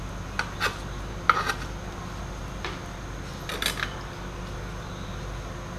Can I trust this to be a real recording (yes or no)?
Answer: yes